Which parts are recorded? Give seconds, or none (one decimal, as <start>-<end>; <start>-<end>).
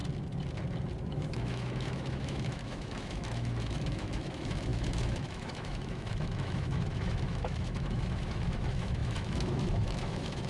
0.0-1.1